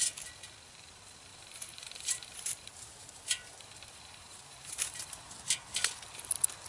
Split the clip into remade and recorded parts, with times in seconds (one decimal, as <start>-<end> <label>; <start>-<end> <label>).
0.0-1.3 recorded; 1.3-5.3 remade; 5.3-6.7 recorded